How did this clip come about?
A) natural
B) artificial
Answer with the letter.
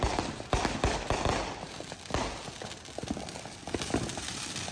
B